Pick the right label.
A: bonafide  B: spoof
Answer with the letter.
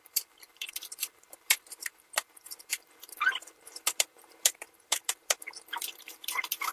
B